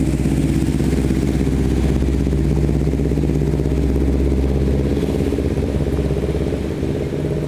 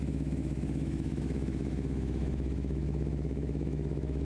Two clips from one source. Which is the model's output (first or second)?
second